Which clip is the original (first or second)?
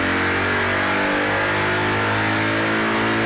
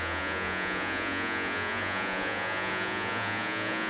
first